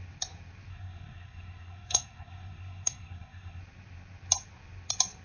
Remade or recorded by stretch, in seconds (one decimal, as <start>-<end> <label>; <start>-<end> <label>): 0.0-0.7 recorded; 0.7-3.6 remade; 3.6-5.2 recorded